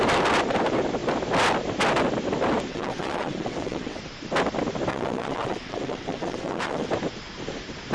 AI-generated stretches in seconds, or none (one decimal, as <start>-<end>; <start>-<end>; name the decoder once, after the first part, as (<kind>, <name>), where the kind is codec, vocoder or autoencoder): 2.7-4.0 (vocoder, WaveNeXt); 4.9-6.9